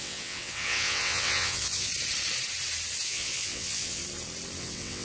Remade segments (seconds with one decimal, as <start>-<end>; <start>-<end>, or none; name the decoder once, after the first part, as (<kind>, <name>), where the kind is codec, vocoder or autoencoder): 0.0-1.9 (vocoder, WaveNeXt); 3.0-4.0; 4.6-5.0